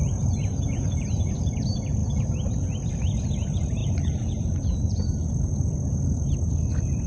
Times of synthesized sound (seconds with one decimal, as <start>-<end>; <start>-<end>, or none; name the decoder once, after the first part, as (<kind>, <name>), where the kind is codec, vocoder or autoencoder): 0.0-1.3 (vocoder, BigVGAN v2); 3.8-5.3